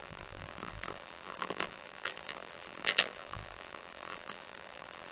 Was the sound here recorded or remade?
remade